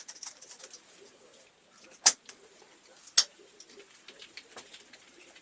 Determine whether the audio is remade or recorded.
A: recorded